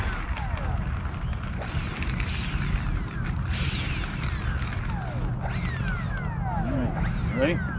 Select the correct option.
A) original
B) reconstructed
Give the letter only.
A